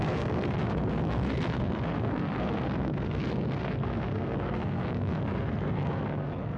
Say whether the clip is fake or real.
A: fake